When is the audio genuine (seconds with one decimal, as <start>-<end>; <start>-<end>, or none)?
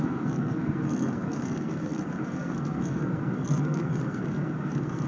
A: none